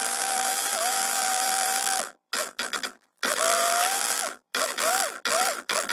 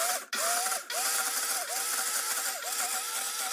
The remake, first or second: first